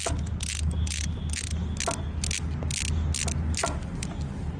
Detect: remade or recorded recorded